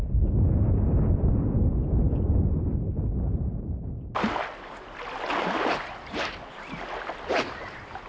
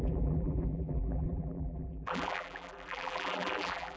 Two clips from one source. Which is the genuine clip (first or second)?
first